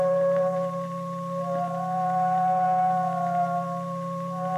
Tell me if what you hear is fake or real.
real